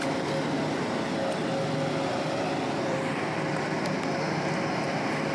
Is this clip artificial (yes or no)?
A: yes